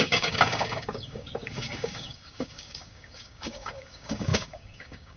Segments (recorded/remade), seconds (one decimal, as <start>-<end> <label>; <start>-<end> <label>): 0.0-5.2 remade